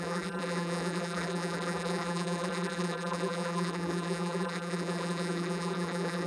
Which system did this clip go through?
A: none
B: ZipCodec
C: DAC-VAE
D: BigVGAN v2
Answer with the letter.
D